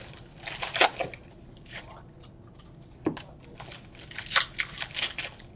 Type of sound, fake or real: real